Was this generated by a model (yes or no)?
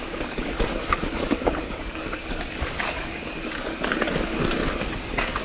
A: yes